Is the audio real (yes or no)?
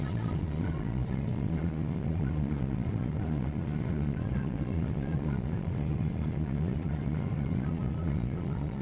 no